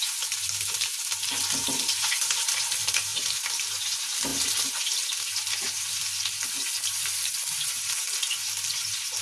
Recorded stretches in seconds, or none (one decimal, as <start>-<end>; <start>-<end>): 0.0-1.6; 2.3-4.3; 7.7-9.2